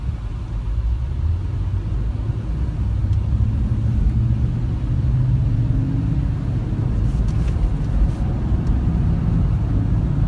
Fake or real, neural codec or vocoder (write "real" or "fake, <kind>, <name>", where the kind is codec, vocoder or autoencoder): real